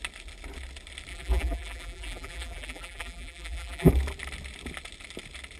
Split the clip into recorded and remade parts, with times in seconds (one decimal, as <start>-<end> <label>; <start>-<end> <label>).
0.0-1.1 recorded; 1.1-3.9 remade; 3.9-5.6 recorded